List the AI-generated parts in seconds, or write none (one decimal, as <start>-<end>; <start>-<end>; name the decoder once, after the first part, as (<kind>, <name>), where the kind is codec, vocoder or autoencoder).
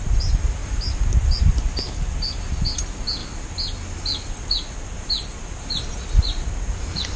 none